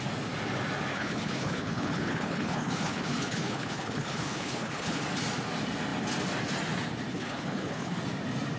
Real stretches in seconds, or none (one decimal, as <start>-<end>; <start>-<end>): 0.0-0.9; 5.0-7.1; 8.0-8.6